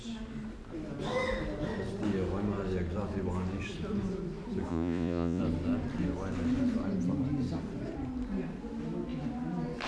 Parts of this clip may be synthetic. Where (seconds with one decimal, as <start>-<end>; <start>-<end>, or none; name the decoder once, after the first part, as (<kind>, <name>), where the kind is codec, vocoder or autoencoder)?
4.7-5.4 (vocoder, Vocos)